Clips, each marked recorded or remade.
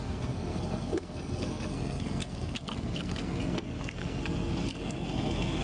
remade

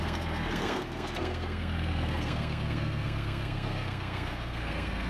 remade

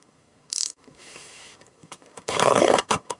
remade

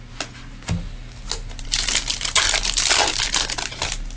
recorded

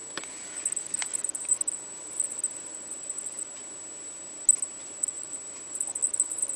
recorded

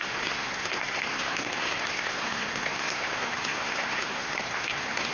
remade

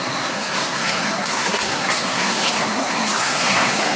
remade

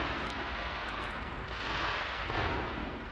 remade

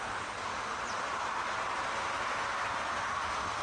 recorded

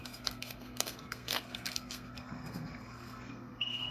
remade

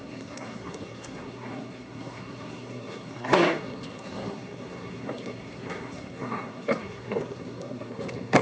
remade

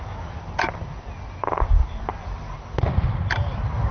recorded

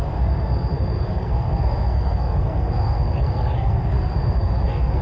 remade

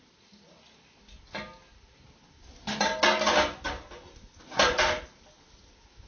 recorded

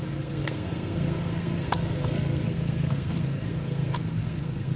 remade